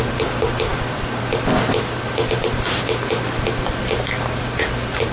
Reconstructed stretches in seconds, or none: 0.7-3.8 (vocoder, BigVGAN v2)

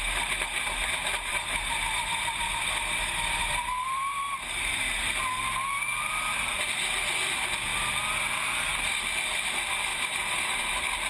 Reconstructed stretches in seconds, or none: 1.3-4.8 (vocoder, BigVGAN v2); 9.9-10.6

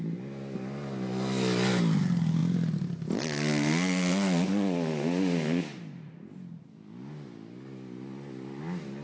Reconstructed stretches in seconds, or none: none

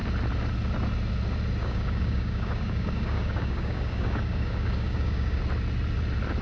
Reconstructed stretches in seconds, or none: 1.6-5.4 (codec, DAC)

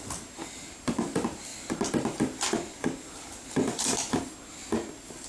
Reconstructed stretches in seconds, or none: none

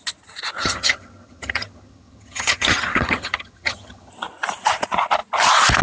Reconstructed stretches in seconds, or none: 0.6-4.1 (vocoder, HiFi-GAN)

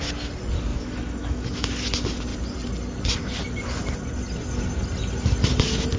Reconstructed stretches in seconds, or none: 0.7-1.7 (autoencoder, DAC-VAE)

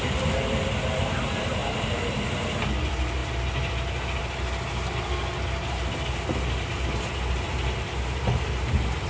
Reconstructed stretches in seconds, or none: 1.6-2.2 (vocoder, BigVGAN v2)